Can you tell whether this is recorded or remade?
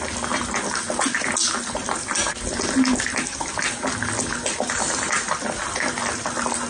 recorded